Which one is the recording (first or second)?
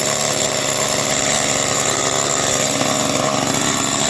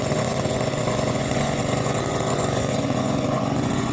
first